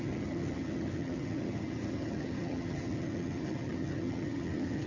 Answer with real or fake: fake